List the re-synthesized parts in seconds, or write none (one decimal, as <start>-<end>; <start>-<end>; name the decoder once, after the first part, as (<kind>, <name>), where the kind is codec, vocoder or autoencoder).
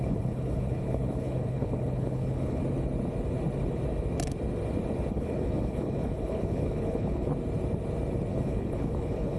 0.0-2.6 (codec, HILCodec); 5.1-7.3; 8.3-9.4